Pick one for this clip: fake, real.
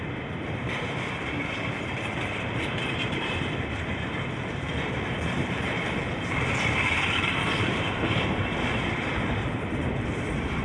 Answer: fake